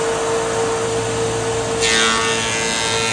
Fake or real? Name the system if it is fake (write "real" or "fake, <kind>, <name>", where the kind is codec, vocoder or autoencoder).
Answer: real